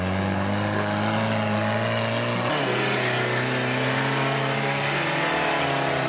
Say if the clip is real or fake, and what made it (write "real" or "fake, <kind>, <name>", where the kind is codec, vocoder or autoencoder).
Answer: real